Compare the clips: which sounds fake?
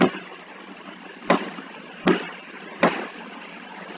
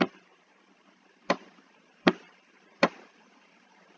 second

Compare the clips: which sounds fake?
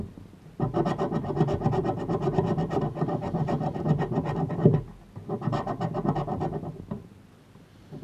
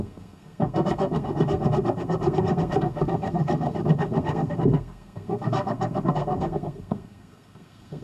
second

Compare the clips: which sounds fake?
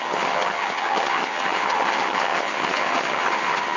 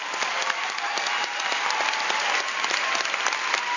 first